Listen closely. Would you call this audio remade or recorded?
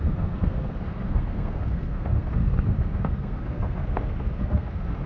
remade